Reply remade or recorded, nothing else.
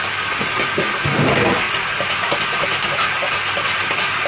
recorded